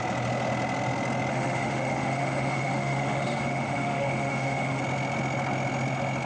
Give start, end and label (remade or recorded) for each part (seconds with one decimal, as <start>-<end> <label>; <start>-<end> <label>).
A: 0.0-1.3 recorded; 1.3-4.8 remade; 4.8-6.3 recorded